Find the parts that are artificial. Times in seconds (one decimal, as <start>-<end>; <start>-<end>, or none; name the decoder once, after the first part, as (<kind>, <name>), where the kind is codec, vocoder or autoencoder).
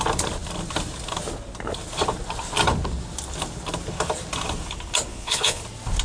5.1-5.6 (vocoder, Vocos)